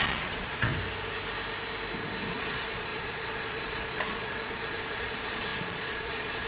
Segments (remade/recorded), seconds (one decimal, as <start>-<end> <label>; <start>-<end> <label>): 0.0-0.7 remade; 0.7-2.3 recorded; 2.3-6.5 remade